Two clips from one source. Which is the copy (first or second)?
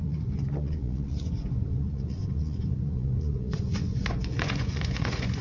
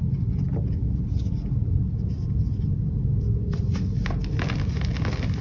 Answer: first